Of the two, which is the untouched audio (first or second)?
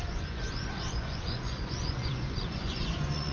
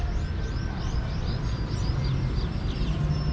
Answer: second